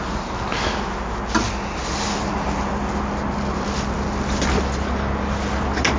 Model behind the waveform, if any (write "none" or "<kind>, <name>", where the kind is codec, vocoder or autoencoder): none